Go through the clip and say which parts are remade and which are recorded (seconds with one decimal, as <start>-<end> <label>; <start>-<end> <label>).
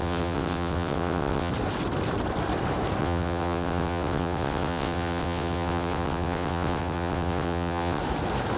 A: 0.0-1.5 remade; 1.5-3.0 recorded; 3.0-8.0 remade; 8.0-8.6 recorded